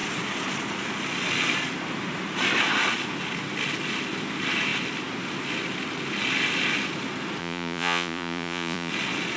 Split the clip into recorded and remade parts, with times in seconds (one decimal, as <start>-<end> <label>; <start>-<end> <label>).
0.0-7.4 recorded; 7.4-8.9 remade; 8.9-9.4 recorded